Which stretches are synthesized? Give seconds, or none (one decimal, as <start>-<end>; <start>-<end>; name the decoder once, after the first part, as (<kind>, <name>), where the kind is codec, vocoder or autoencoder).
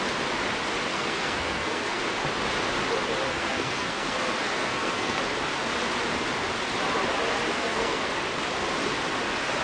0.9-2.0 (codec, SNAC); 3.3-5.2; 7.5-8.1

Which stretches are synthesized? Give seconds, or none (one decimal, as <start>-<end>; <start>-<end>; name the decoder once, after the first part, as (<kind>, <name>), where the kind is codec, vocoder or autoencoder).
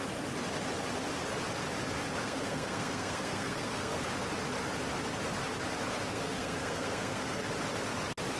2.2-4.0 (codec, SNAC); 6.1-7.4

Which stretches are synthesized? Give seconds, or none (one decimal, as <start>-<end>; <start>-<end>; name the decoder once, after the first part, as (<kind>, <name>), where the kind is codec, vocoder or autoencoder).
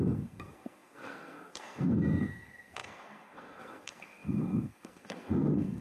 0.0-5.8 (codec, SNAC)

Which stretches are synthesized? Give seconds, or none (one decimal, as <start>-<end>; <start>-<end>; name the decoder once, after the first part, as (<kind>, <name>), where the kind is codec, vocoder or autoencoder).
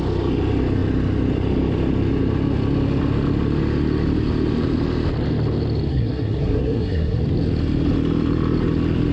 5.9-7.2 (codec, SNAC)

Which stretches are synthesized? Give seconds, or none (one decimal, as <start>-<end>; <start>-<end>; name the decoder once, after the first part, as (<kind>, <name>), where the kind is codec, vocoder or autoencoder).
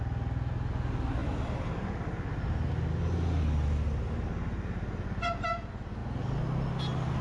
none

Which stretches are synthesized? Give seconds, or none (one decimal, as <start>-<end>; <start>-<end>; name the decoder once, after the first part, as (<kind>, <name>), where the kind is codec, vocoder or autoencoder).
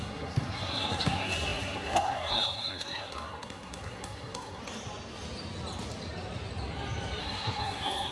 0.0-4.6 (codec, SNAC); 7.2-8.1